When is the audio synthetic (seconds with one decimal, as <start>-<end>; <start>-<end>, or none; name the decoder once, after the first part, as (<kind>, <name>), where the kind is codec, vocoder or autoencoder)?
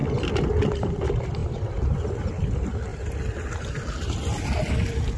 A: none